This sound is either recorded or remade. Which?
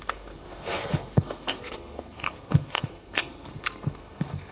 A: remade